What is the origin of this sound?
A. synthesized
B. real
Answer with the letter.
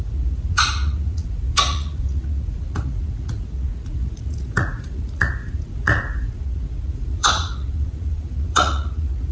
A